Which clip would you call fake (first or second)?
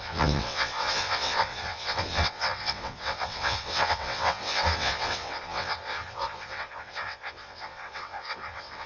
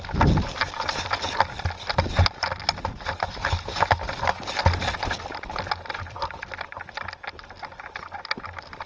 first